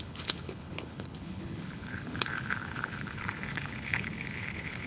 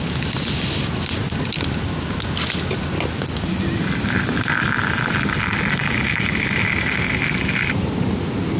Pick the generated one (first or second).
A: first